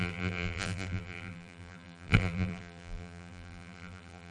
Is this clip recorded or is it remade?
remade